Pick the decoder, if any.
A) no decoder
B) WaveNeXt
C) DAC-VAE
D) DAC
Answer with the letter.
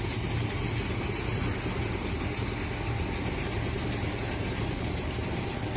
A